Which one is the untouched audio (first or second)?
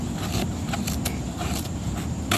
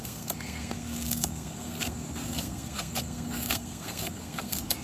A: first